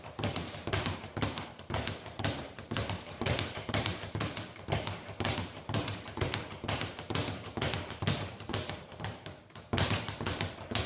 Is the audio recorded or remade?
remade